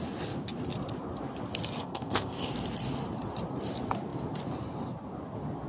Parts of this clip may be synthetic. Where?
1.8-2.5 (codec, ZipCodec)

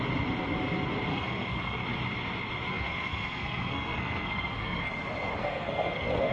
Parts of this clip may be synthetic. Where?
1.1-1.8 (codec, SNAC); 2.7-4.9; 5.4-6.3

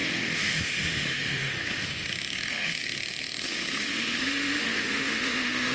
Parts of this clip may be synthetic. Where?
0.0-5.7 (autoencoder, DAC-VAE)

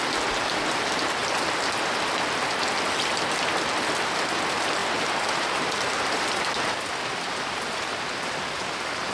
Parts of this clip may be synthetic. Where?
4.8-6.5 (vocoder, BigVGAN v2)

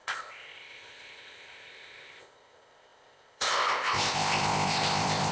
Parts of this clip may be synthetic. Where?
0.0-5.3 (codec, ZipCodec)